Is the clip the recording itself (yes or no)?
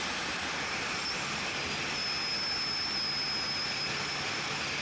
yes